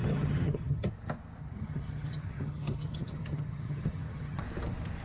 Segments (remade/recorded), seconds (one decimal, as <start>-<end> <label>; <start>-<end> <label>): 0.0-0.9 remade; 0.9-1.4 recorded; 1.4-4.4 remade; 4.4-5.0 recorded